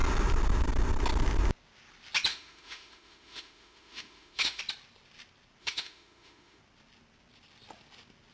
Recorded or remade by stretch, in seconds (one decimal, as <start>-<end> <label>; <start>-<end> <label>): 0.0-2.3 recorded; 2.3-4.6 remade; 4.6-5.6 recorded; 5.6-6.6 remade; 6.6-8.3 recorded